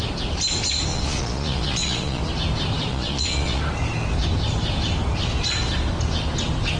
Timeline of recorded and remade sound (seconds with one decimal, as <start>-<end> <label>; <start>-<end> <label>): 0.0-0.9 recorded; 0.9-2.2 remade; 2.2-2.9 recorded; 2.9-3.6 remade; 3.6-6.8 recorded